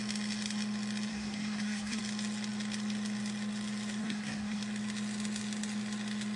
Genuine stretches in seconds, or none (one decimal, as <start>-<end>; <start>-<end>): 0.0-1.1; 2.0-4.0; 4.6-6.4